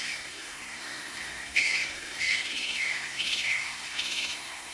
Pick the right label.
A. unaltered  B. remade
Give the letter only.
B